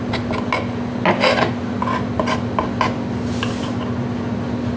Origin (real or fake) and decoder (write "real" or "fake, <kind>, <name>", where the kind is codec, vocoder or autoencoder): real